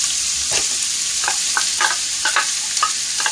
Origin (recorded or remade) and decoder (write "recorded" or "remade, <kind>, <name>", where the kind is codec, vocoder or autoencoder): recorded